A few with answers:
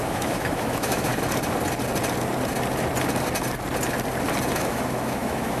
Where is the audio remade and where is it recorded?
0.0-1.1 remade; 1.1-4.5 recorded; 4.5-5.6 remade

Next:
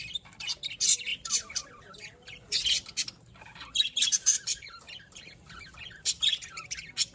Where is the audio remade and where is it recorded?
0.0-1.1 recorded; 1.1-2.5 remade; 2.5-4.0 recorded; 4.0-6.6 remade; 6.6-7.1 recorded